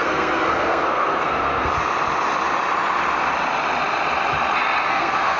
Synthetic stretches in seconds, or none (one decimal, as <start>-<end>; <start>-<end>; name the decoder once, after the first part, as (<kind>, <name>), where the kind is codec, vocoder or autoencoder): 0.0-1.7 (codec, SNAC); 4.9-5.4